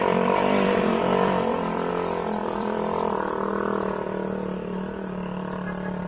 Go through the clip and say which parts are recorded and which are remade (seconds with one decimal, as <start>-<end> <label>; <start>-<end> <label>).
0.0-1.9 remade; 1.9-2.4 recorded; 2.4-3.1 remade; 3.1-6.1 recorded